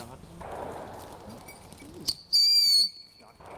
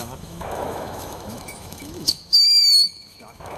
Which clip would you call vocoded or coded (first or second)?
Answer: second